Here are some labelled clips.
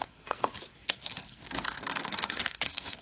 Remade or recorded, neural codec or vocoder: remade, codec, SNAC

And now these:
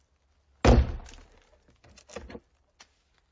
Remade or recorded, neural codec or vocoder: recorded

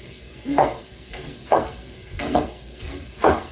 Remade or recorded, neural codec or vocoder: remade, codec, SNAC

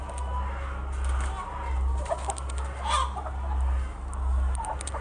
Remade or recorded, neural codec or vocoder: recorded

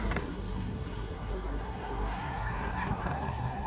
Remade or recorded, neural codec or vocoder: remade, codec, SNAC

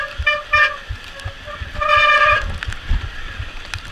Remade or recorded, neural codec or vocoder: recorded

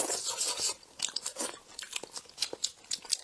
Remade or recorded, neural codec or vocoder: recorded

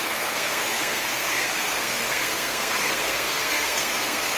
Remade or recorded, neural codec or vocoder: remade, codec, SNAC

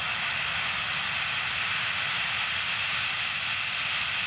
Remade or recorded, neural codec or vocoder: recorded